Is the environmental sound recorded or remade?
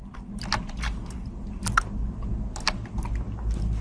recorded